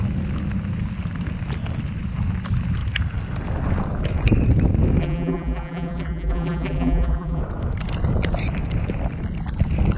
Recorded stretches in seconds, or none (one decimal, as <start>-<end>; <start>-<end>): 0.0-5.0; 7.4-10.0